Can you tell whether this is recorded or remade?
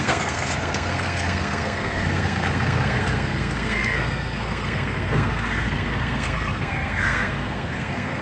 remade